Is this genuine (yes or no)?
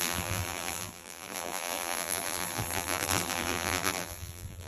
no